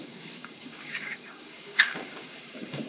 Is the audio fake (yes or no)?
yes